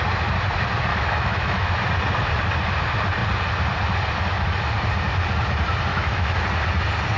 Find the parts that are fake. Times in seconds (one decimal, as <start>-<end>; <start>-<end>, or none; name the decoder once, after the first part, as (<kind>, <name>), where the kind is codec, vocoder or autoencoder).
0.9-1.7 (autoencoder, DAC-VAE); 5.9-6.4